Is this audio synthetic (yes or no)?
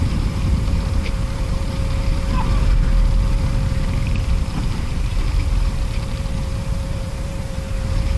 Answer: yes